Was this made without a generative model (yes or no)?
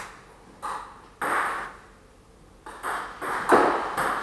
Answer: yes